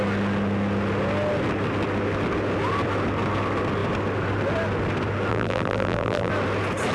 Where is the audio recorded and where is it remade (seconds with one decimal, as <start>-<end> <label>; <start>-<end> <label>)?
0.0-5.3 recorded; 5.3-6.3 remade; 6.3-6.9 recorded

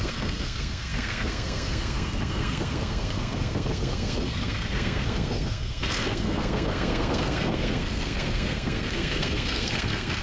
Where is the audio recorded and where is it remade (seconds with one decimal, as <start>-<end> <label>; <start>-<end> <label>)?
0.0-10.2 remade

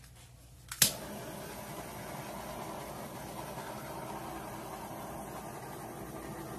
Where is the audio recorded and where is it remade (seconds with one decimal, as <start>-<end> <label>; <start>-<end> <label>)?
0.0-6.6 recorded

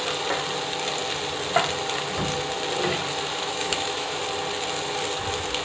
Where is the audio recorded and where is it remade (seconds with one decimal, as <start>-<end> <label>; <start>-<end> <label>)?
0.0-3.3 recorded; 3.3-4.2 remade; 4.2-5.6 recorded

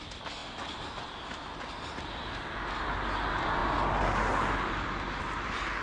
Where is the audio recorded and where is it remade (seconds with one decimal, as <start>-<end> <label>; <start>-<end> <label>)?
0.0-5.8 recorded